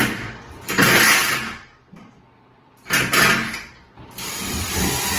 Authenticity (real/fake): fake